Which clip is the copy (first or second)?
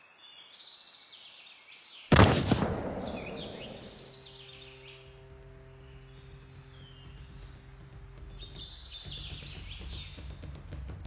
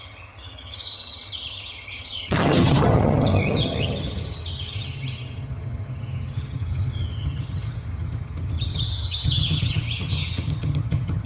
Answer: second